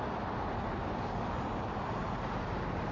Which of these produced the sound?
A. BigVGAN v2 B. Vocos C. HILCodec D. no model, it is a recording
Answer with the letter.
D